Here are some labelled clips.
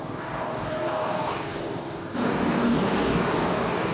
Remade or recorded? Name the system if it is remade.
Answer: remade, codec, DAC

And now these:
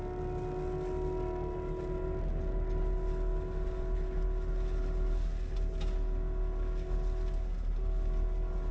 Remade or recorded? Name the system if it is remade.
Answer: recorded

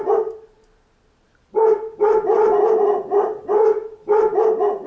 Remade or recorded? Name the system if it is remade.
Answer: recorded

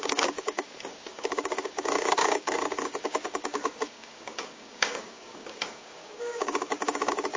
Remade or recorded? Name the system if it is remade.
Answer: remade, codec, DAC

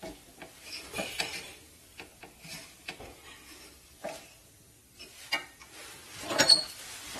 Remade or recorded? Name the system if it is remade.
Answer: recorded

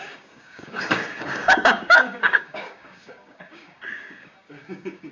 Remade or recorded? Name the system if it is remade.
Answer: remade, codec, DAC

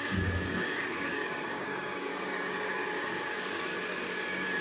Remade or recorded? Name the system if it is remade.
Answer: remade, codec, DAC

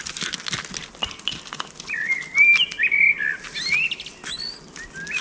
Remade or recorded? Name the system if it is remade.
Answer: recorded